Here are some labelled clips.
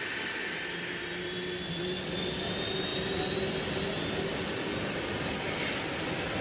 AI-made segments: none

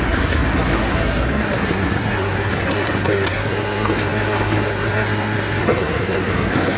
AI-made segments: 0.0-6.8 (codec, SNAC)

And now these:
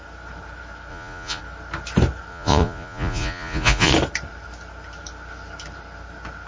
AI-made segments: 0.9-1.4 (vocoder, Vocos); 2.3-3.9

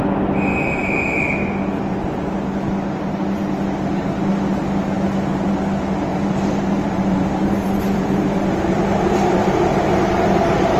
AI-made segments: 6.1-10.8 (vocoder, BigVGAN v2)